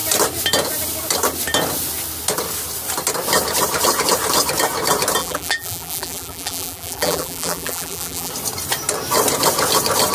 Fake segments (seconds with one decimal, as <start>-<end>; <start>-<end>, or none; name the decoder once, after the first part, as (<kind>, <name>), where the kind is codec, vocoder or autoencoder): 5.2-8.3 (vocoder, BigVGAN v2)